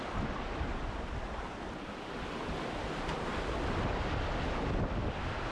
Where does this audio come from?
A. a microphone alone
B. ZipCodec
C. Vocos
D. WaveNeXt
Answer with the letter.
A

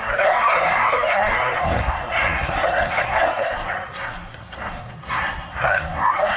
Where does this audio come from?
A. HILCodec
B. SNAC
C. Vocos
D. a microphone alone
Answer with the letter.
B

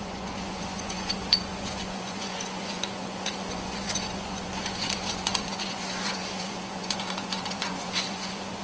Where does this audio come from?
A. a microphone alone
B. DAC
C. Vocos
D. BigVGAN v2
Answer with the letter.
C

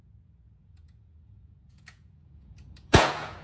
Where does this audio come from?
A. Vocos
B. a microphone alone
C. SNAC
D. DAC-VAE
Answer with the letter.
A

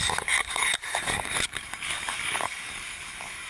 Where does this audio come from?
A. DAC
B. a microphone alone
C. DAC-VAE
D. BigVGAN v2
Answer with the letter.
A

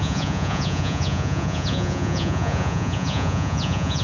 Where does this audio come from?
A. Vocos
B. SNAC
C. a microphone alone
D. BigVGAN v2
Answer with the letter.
A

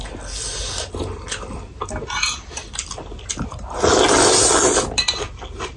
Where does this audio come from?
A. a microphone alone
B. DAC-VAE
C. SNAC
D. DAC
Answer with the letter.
A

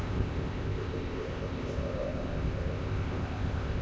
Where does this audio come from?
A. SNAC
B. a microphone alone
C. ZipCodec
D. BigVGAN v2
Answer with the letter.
C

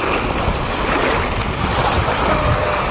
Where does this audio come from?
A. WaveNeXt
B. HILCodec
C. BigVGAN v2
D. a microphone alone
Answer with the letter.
D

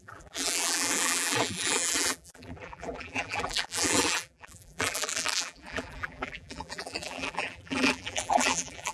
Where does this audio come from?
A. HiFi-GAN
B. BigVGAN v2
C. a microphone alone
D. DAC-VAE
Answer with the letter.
B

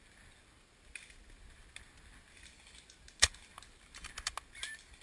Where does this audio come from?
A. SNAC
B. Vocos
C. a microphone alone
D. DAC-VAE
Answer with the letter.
C